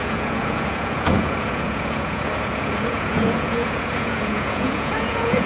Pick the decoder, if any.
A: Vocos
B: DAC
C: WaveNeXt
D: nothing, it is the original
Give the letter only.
A